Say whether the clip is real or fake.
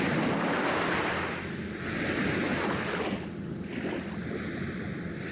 real